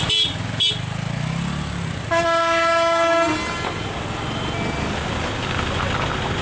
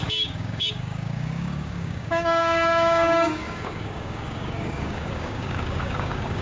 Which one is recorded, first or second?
first